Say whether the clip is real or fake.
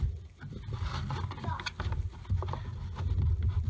real